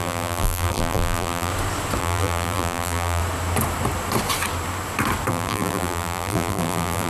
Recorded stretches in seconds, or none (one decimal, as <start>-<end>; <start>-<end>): 1.5-2.0; 3.2-5.3